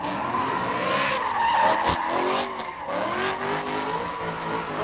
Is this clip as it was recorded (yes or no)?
yes